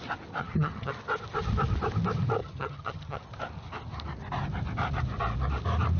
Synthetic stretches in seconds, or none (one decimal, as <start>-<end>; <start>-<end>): 0.4-0.9; 2.4-3.2